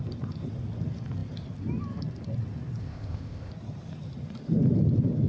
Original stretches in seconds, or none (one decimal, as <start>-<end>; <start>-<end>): 0.0-2.8; 3.5-5.3